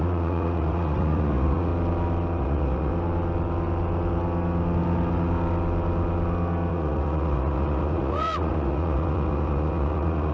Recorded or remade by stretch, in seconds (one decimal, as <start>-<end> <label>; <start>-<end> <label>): 0.0-1.7 remade; 1.7-2.4 recorded; 2.4-2.9 remade; 2.9-6.7 recorded; 6.7-10.3 remade